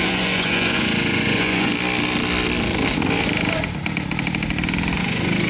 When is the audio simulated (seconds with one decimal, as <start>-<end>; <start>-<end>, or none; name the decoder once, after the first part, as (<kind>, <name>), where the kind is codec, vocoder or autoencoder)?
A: 0.0-1.7 (vocoder, Vocos); 5.0-5.5